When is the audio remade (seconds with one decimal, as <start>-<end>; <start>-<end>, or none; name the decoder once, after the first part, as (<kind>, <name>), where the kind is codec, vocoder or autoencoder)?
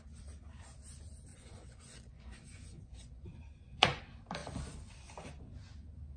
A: 1.3-4.0 (vocoder, Vocos)